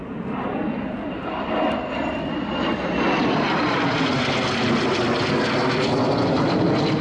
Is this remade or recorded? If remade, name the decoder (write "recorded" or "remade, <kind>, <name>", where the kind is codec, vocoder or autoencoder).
recorded